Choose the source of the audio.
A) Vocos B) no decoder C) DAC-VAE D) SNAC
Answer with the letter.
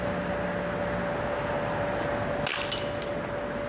B